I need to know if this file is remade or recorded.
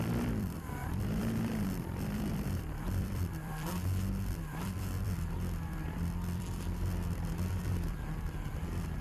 remade